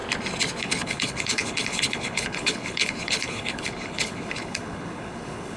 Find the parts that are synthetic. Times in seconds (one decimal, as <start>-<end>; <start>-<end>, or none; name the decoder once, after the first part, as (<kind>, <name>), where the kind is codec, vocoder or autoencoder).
0.6-5.6 (codec, HILCodec)